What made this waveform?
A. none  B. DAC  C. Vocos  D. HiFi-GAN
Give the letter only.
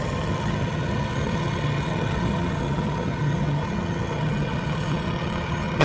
D